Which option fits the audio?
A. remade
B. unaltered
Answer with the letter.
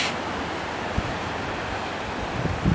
B